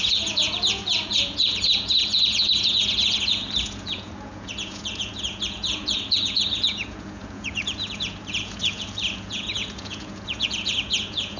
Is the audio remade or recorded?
remade